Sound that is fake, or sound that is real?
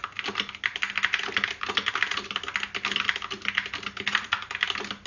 real